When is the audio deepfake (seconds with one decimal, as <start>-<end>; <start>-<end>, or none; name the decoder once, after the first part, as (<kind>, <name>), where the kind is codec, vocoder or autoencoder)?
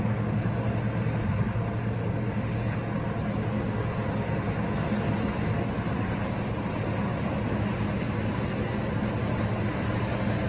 none